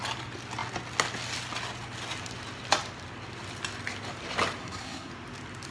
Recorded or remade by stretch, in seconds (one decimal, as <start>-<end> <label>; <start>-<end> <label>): 0.0-4.6 recorded; 4.6-5.1 remade; 5.1-5.7 recorded